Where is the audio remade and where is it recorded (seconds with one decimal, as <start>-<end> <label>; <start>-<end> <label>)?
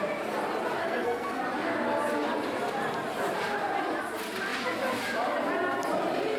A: 0.0-0.8 recorded; 0.8-1.4 remade; 1.4-6.4 recorded